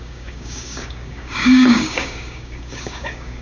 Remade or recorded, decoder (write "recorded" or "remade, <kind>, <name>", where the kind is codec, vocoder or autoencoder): remade, codec, DAC